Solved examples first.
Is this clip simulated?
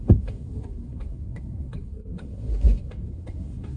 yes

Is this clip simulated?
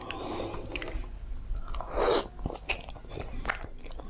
no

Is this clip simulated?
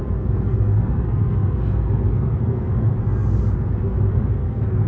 yes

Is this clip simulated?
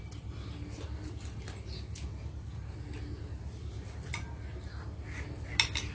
no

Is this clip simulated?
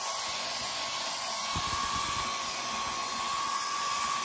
yes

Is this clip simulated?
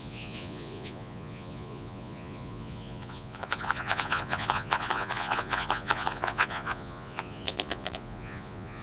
yes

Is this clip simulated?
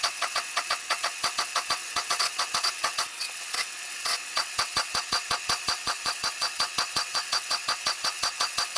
yes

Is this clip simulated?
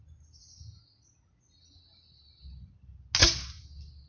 no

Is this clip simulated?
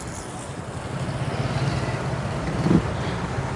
no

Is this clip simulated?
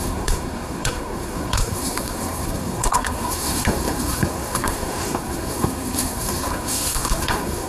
yes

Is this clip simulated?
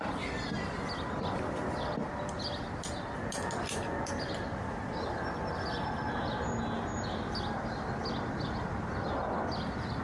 no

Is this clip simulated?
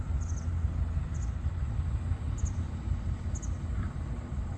no